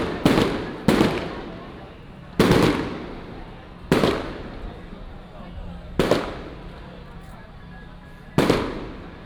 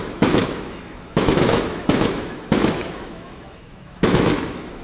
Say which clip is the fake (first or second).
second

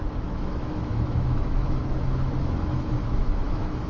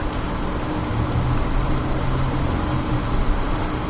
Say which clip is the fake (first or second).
first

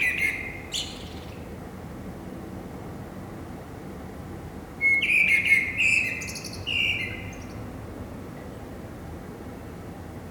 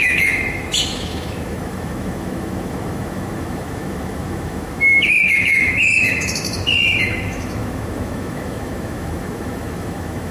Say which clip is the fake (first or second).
second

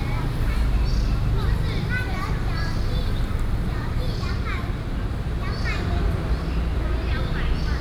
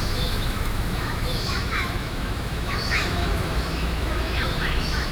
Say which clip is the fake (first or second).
second